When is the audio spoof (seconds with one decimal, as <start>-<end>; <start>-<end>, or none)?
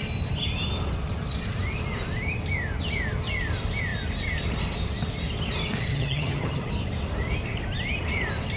5.9-6.7